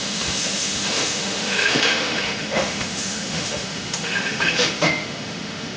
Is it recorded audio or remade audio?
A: remade